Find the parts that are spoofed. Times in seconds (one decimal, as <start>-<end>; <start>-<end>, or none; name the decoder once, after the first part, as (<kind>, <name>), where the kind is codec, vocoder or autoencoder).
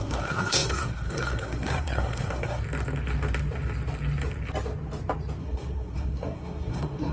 0.0-2.6 (codec, SNAC); 5.4-7.1